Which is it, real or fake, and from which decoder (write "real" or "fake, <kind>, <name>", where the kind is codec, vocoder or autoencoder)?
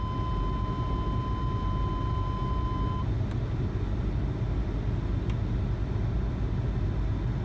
real